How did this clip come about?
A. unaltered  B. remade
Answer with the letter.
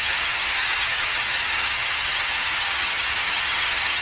B